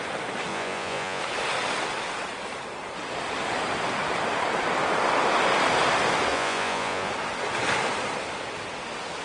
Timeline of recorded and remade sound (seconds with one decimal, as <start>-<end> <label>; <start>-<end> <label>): 0.0-0.5 recorded; 0.5-1.2 remade; 1.2-6.3 recorded; 6.3-7.1 remade; 7.1-9.2 recorded